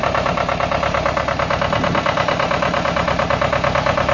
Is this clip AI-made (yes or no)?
no